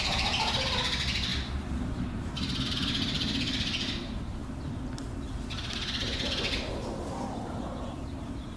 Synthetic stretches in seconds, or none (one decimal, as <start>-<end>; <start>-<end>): 0.0-1.3; 2.1-4.4; 7.0-8.6